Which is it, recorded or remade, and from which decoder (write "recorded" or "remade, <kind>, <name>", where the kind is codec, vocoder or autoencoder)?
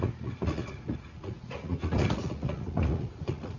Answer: remade, vocoder, Vocos